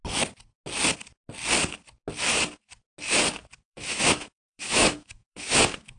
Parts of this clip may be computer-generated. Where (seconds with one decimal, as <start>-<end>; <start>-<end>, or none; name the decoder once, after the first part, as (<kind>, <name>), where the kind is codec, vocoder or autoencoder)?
3.6-6.0 (autoencoder, DAC-VAE)